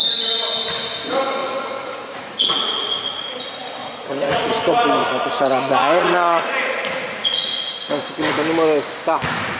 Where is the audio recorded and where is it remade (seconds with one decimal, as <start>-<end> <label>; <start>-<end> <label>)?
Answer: 0.0-1.4 recorded; 1.4-3.3 remade; 3.3-3.8 recorded; 3.8-4.5 remade; 4.5-5.0 recorded; 5.0-7.7 remade; 7.7-9.6 recorded